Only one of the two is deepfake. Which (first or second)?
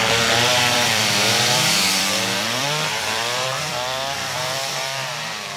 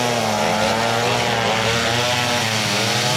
first